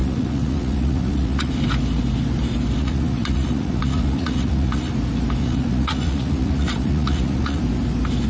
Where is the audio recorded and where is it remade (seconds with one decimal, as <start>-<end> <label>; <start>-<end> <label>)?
0.0-1.5 remade; 1.5-2.8 recorded; 2.8-4.9 remade; 4.9-5.4 recorded; 5.4-7.6 remade; 7.6-8.3 recorded